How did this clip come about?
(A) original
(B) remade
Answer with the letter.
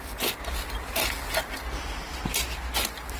A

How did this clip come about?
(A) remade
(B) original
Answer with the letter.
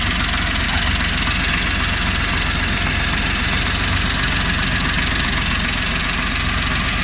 B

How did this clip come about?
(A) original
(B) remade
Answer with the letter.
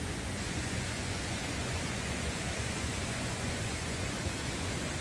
B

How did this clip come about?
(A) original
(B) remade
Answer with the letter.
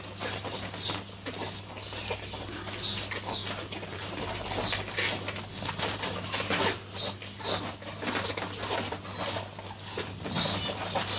A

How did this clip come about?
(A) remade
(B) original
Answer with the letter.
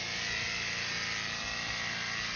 B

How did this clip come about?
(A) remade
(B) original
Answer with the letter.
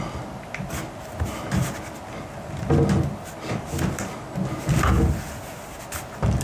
B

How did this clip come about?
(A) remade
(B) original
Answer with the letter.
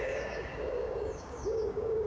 A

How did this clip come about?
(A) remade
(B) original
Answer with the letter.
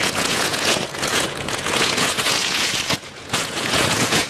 A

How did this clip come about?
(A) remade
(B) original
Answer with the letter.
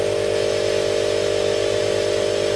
B